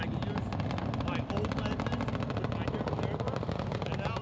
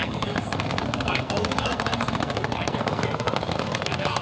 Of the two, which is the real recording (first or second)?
first